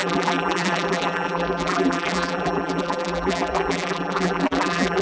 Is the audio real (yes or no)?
no